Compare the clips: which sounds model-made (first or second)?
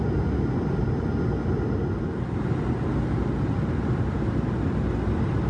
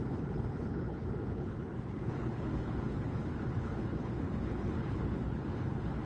second